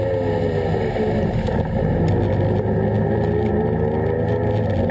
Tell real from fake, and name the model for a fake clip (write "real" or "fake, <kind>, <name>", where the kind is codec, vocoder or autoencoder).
real